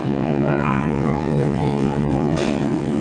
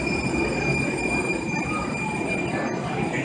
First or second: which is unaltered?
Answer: second